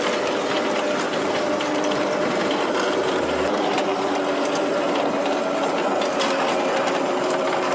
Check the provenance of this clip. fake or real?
real